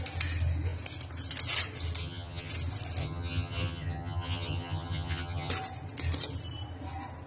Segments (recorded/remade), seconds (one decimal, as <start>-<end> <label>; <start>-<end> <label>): 0.0-2.0 recorded; 2.0-2.5 remade; 2.5-3.0 recorded; 3.0-5.5 remade; 5.5-7.3 recorded